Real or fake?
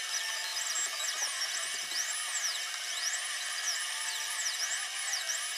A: real